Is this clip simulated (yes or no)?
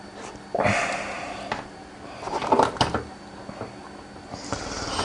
no